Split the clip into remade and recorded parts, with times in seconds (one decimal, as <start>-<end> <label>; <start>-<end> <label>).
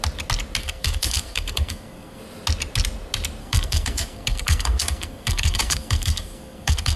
0.0-0.6 recorded; 0.6-2.2 remade; 2.2-3.4 recorded; 3.4-7.0 remade